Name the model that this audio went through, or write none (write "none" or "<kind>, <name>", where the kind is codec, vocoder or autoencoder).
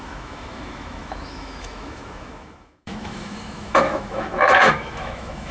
autoencoder, DAC-VAE